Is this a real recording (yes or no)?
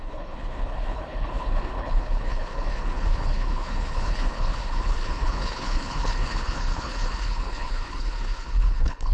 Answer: no